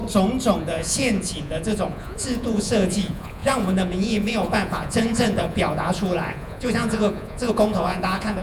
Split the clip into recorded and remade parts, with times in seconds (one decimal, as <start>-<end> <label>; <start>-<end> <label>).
0.0-0.6 recorded; 0.6-8.4 remade